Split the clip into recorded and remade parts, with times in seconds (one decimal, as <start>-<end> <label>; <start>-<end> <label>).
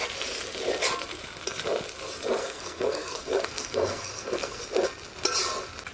0.0-2.4 recorded; 2.4-4.6 remade; 4.6-5.9 recorded